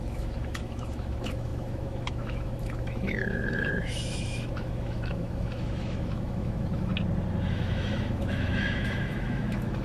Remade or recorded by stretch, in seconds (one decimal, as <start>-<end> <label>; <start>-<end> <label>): 0.0-6.9 remade; 6.9-7.5 recorded; 7.5-9.8 remade